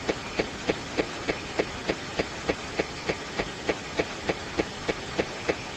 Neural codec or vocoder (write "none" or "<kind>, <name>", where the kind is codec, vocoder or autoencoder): none